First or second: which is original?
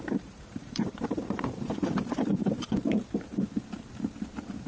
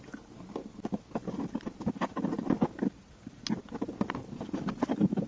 second